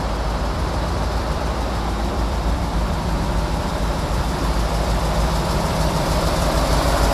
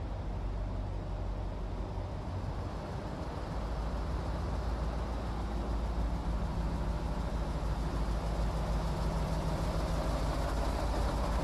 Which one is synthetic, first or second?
first